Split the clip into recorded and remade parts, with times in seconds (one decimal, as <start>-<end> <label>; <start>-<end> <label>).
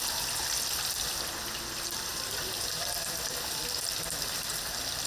0.0-2.1 recorded; 2.1-4.5 remade; 4.5-5.1 recorded